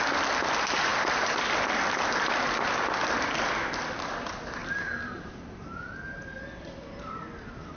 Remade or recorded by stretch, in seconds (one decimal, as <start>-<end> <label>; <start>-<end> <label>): 0.0-7.8 recorded